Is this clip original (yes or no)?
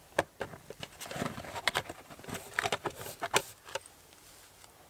yes